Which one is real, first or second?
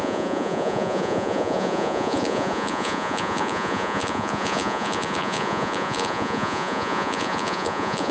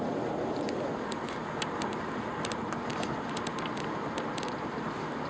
second